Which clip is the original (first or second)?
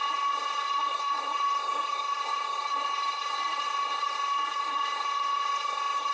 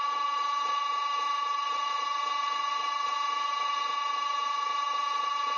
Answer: second